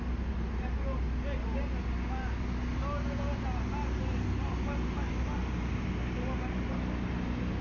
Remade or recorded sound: recorded